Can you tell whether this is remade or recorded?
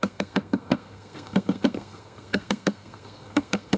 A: remade